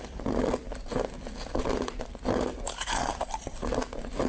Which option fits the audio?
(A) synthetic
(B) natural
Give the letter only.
B